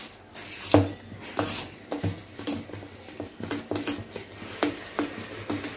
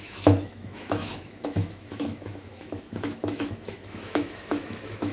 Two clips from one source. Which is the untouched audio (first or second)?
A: first